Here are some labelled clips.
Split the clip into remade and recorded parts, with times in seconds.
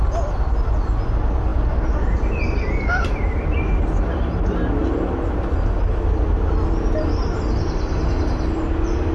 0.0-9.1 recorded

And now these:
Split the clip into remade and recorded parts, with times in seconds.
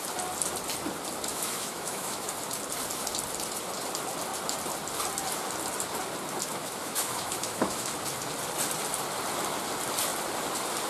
0.0-1.3 recorded; 1.3-2.3 remade; 2.3-6.6 recorded; 6.6-7.9 remade; 7.9-10.9 recorded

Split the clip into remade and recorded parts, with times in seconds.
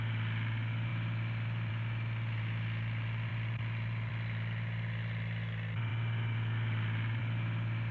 0.0-7.9 recorded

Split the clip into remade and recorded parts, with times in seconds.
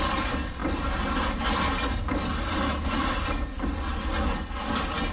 0.0-5.1 recorded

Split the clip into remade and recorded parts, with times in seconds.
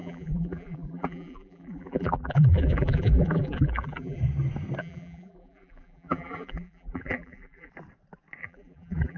0.0-4.2 remade; 4.2-4.8 recorded; 4.8-7.7 remade; 7.7-8.4 recorded; 8.4-9.2 remade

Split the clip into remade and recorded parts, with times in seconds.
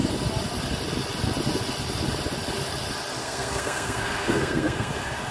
0.0-3.2 recorded; 3.2-5.3 remade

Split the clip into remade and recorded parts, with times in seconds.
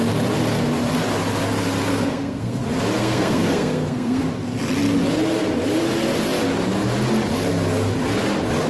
0.0-1.9 recorded; 1.9-2.6 remade; 2.6-3.0 recorded; 3.0-4.2 remade; 4.2-8.7 recorded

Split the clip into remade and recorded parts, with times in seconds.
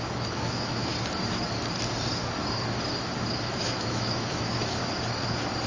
0.0-0.9 remade; 0.9-3.3 recorded; 3.3-4.8 remade; 4.8-5.7 recorded